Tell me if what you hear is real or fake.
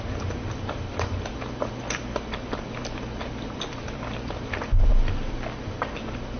fake